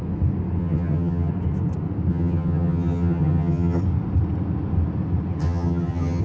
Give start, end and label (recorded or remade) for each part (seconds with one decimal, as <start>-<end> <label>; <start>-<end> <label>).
0.0-0.6 recorded; 0.6-1.3 remade; 1.3-2.1 recorded; 2.1-3.8 remade; 3.8-5.4 recorded; 5.4-6.2 remade